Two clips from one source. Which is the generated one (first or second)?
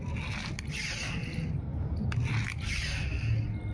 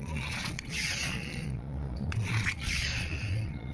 second